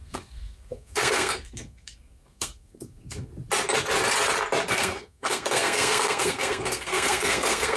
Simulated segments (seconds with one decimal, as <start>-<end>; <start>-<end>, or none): 0.0-3.3; 4.7-7.8